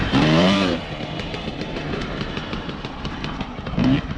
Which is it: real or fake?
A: fake